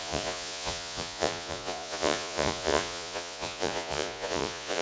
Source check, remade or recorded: remade